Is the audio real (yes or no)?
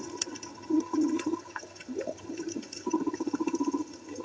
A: no